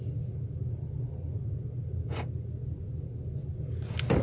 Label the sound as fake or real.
real